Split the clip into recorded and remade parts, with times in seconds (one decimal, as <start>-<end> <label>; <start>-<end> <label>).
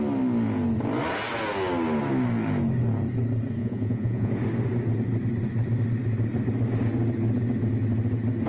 0.0-3.6 recorded; 3.6-4.3 remade; 4.3-8.5 recorded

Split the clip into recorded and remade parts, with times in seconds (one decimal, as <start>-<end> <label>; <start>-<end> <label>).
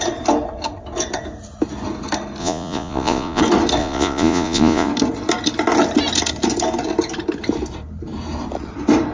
0.0-2.4 recorded; 2.4-3.4 remade; 3.4-3.8 recorded; 3.8-4.9 remade; 4.9-9.1 recorded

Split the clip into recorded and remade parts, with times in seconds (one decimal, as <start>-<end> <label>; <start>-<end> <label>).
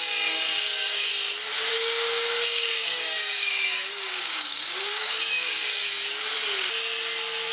0.0-1.1 remade; 1.1-1.7 recorded; 1.7-5.8 remade; 5.8-7.5 recorded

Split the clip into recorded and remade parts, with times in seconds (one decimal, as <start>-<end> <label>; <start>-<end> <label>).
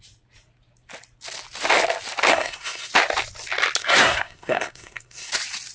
0.0-2.3 recorded; 2.3-2.9 remade; 2.9-3.8 recorded; 3.8-5.3 remade; 5.3-5.7 recorded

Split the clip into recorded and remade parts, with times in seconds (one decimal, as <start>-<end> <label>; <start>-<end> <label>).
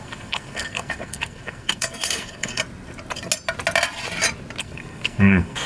0.0-2.6 remade; 2.6-4.6 recorded; 4.6-5.7 remade